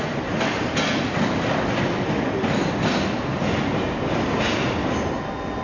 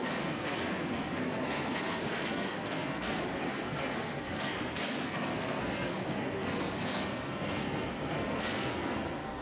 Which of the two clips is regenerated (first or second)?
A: second